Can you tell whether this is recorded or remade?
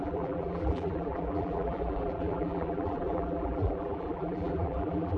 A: remade